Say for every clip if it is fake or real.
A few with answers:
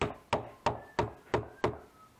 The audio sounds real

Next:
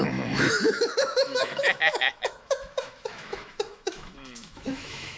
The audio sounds fake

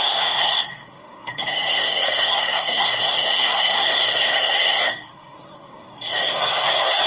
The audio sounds fake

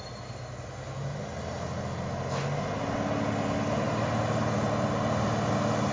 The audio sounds real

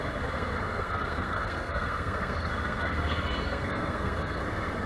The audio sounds fake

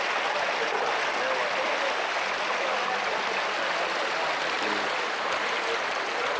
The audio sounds real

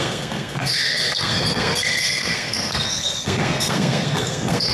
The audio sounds fake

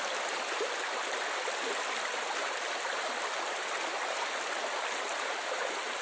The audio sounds real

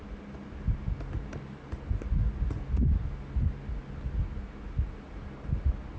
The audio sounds real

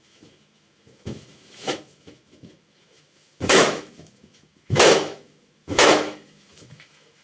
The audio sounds fake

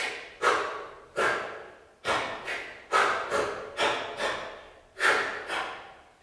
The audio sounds real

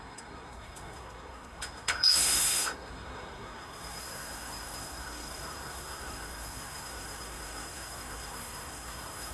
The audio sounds fake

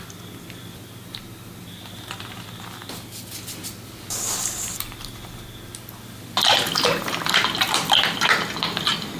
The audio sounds real